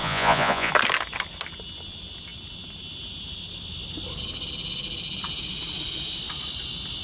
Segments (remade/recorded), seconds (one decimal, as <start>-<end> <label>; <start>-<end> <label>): 0.0-0.7 remade; 0.7-7.0 recorded